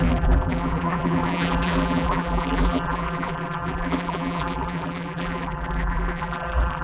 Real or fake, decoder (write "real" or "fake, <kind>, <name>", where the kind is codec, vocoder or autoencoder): fake, vocoder, BigVGAN v2